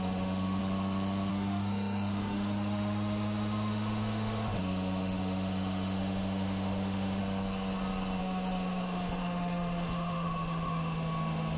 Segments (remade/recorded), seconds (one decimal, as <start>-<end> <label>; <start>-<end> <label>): 0.0-0.6 remade; 0.6-1.3 recorded; 1.3-7.2 remade; 7.2-8.2 recorded; 8.2-11.6 remade

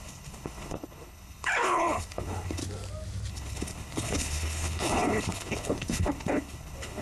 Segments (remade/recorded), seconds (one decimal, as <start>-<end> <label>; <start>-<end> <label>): 0.0-2.6 remade; 2.6-3.3 recorded; 3.3-7.0 remade

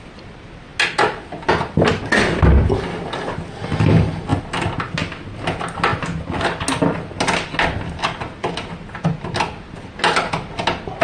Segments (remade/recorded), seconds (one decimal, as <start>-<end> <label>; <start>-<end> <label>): 0.0-11.0 recorded

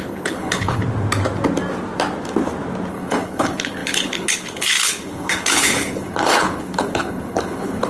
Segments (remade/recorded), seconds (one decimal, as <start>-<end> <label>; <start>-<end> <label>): 0.0-0.8 remade; 0.8-2.9 recorded; 2.9-7.9 remade

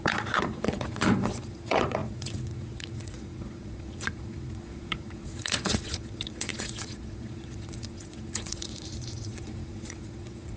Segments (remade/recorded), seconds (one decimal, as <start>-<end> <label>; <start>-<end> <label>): 0.0-10.6 remade